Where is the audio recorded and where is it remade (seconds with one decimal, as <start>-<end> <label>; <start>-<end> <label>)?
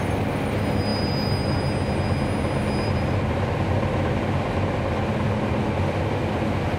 0.0-6.8 recorded